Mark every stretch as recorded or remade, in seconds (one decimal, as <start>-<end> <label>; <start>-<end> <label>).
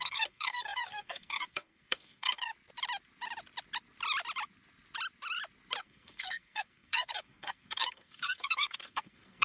0.0-2.5 remade; 2.5-5.8 recorded; 5.8-9.4 remade